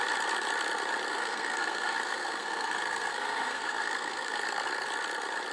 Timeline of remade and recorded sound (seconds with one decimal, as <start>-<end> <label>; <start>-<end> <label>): 0.0-1.1 recorded; 1.1-4.4 remade; 4.4-5.5 recorded